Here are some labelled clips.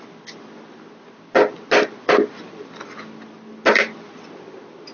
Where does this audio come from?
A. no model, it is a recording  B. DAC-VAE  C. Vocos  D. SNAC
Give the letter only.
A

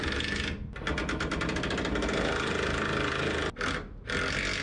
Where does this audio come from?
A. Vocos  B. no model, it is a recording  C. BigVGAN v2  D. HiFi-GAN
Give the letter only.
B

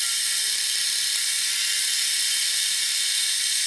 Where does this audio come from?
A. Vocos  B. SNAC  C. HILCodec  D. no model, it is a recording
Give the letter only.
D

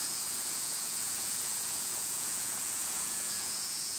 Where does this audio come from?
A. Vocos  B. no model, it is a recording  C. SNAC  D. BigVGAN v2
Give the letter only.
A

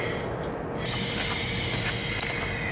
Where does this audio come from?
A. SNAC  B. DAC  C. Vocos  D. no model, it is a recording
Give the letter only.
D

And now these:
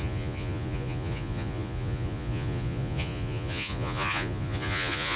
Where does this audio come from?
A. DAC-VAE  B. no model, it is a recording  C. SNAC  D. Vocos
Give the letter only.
D